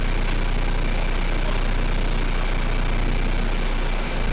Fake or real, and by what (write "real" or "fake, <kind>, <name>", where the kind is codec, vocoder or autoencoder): real